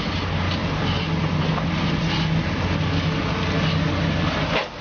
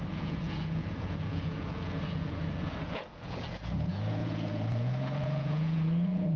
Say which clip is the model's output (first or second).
second